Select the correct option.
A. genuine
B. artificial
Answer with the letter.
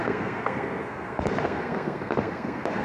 B